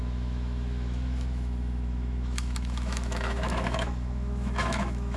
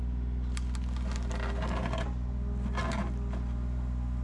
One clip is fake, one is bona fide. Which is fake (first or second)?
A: first